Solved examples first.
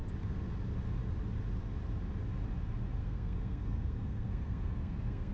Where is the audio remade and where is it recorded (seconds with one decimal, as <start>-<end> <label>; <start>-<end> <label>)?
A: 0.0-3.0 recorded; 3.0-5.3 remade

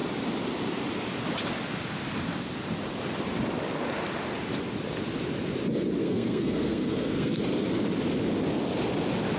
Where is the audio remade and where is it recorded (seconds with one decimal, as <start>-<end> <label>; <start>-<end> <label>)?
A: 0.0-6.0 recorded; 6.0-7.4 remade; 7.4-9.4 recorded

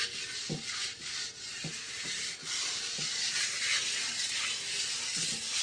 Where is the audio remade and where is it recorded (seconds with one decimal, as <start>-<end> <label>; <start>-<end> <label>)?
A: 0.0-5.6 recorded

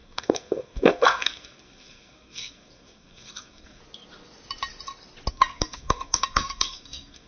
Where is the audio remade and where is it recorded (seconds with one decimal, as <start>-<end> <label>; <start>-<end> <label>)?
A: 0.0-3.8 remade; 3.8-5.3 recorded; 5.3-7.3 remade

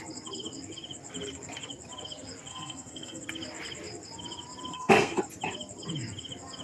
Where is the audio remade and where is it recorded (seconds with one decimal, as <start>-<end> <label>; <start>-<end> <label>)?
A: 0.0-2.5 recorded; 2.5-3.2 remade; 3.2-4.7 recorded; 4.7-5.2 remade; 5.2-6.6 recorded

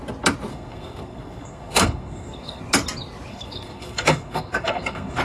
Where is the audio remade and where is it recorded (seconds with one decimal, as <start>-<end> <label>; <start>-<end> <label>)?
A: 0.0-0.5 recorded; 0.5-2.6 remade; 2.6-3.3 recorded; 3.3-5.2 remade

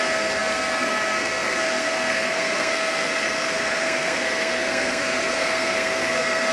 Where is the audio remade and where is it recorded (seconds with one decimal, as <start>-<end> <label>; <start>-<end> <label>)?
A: 0.0-6.5 remade

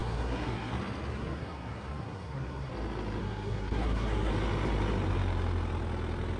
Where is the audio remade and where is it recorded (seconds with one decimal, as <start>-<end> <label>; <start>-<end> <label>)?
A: 0.0-0.7 remade; 0.7-1.1 recorded; 1.1-2.7 remade; 2.7-3.2 recorded; 3.2-4.3 remade; 4.3-6.4 recorded